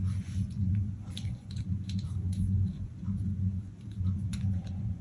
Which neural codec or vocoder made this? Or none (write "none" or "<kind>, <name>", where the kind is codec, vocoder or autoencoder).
vocoder, Vocos